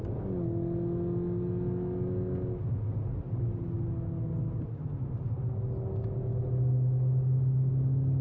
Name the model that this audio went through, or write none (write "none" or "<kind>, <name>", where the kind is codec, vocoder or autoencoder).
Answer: none